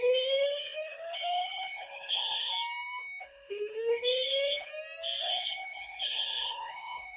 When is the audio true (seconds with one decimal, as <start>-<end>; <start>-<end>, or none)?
2.5-3.2; 4.7-5.2